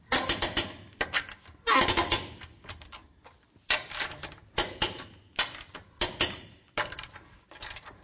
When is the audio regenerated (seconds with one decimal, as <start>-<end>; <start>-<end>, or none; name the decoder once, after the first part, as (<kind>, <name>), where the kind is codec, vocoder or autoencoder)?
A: none